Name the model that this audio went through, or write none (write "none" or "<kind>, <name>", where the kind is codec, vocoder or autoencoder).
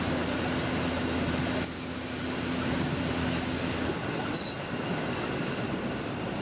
none